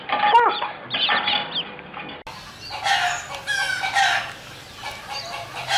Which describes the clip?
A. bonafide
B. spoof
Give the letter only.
A